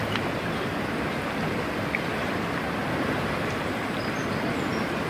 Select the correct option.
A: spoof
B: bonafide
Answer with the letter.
B